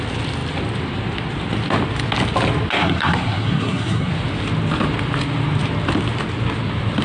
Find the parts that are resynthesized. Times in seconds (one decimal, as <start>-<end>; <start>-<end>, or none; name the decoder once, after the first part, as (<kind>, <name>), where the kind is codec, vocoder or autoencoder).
2.8-4.1 (codec, SNAC)